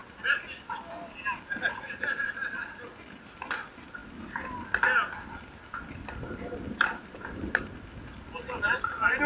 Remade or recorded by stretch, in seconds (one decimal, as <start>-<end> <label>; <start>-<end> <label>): 0.0-9.3 recorded